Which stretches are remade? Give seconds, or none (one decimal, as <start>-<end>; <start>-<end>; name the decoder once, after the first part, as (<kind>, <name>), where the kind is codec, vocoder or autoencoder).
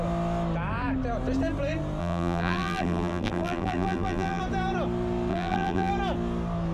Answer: 2.0-4.4 (vocoder, BigVGAN v2); 5.3-5.9